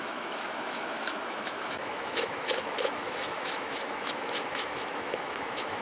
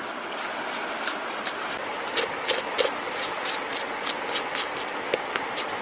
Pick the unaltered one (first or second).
second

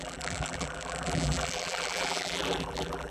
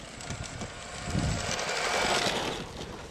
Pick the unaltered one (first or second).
second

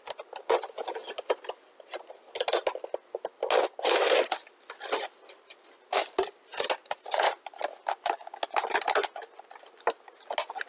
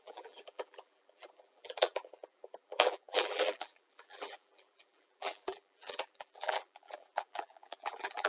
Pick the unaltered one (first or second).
first